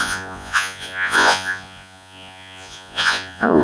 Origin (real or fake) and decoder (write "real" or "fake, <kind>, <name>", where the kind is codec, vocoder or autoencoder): fake, vocoder, Vocos